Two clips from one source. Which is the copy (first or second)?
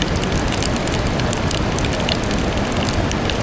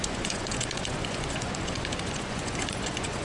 second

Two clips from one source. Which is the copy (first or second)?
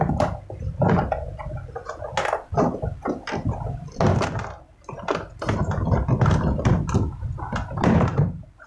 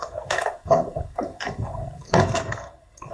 second